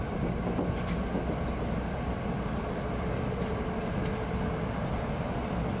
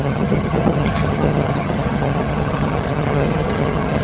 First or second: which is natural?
first